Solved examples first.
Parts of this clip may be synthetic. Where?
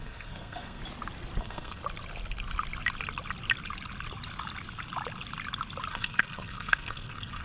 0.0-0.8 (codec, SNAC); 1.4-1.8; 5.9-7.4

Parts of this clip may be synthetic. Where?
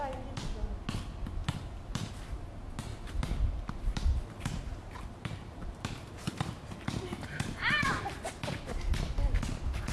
1.4-2.4 (vocoder, BigVGAN v2); 2.9-8.0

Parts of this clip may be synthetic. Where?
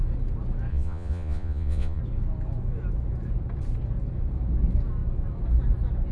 0.7-2.0 (vocoder, Vocos)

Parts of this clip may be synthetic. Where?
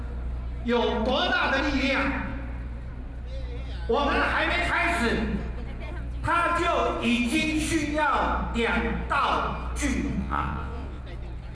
10.2-11.0 (vocoder, WaveNeXt)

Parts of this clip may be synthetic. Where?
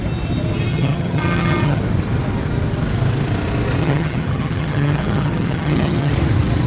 0.7-1.8 (vocoder, HiFi-GAN); 3.8-6.1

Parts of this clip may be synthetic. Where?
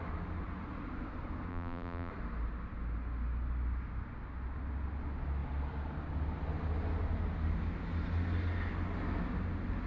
1.5-2.1 (vocoder, BigVGAN v2)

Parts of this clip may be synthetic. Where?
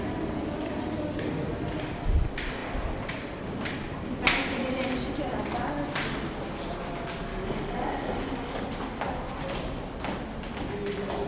7.3-8.6 (codec, DAC)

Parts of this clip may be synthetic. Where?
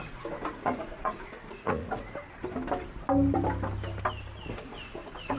0.0-2.2 (vocoder, Vocos); 4.5-5.4